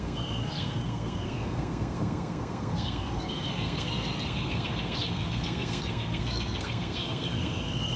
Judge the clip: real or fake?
fake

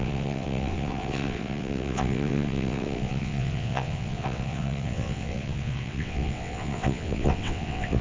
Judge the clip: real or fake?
fake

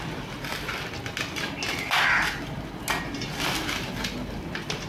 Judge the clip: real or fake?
real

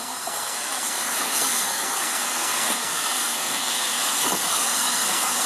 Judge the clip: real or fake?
fake